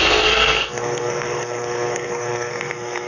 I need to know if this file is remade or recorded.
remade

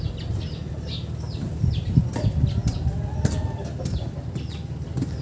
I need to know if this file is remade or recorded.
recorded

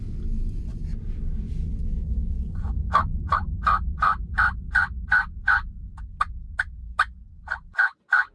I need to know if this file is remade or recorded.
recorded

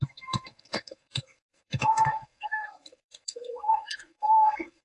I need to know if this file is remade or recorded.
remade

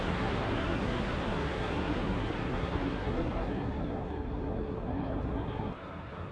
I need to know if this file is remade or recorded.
remade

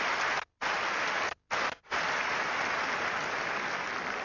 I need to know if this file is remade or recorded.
recorded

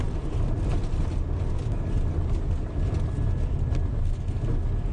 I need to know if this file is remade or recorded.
recorded